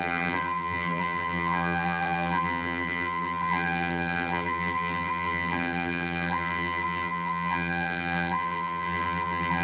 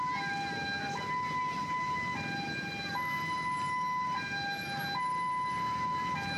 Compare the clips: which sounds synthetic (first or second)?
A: first